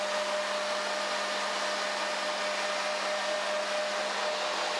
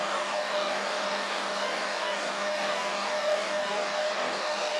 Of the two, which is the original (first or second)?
first